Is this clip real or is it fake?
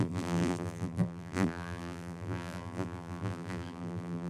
fake